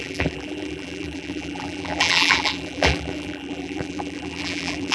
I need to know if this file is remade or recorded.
remade